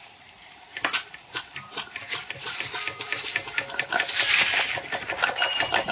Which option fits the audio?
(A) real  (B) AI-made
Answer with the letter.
B